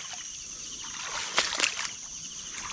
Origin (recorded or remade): recorded